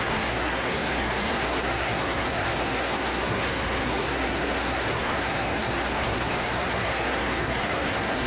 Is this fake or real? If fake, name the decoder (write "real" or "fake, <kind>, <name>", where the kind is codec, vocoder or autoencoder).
fake, codec, SNAC